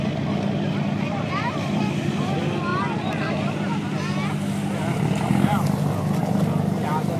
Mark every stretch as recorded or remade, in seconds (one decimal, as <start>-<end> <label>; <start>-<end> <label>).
0.0-7.2 recorded